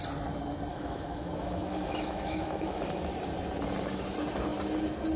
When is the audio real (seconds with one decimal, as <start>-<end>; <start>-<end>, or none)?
0.0-0.7; 3.0-5.2